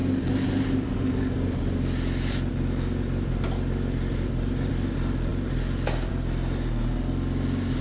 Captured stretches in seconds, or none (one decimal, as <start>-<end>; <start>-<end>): 0.0-7.8